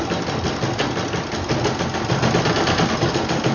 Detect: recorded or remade recorded